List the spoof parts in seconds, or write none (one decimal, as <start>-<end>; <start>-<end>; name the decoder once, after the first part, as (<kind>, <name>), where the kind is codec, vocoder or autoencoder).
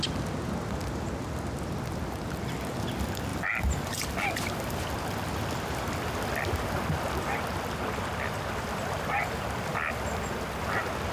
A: none